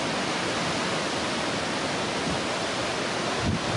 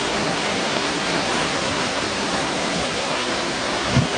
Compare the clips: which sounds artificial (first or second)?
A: second